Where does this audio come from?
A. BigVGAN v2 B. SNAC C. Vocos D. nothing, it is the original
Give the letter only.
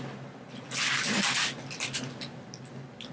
D